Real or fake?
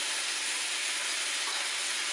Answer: real